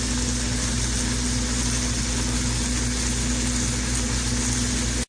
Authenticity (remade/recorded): recorded